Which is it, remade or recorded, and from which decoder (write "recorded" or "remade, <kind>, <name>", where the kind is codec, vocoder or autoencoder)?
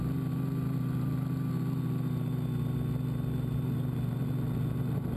recorded